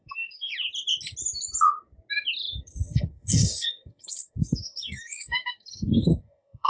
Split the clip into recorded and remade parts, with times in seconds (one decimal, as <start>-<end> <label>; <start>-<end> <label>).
0.0-0.5 remade; 0.5-2.6 recorded; 2.6-6.7 remade